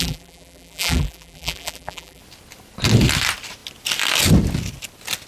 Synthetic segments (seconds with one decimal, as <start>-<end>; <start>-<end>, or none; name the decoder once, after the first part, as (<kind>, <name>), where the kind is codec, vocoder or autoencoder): 0.0-2.2 (vocoder, BigVGAN v2)